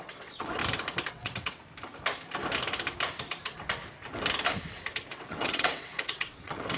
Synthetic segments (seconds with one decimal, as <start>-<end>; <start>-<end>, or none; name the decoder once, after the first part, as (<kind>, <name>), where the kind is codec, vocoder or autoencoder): 0.0-0.6 (vocoder, WaveNeXt); 1.1-1.6; 5.1-6.8